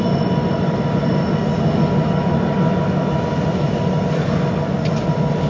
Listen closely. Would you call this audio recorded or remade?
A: recorded